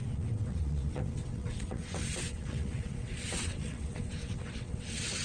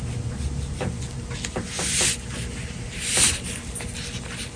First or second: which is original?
second